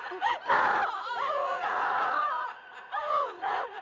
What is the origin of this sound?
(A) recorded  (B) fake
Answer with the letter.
B